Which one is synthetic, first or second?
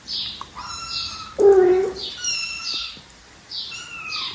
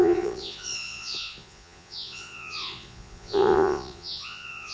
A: second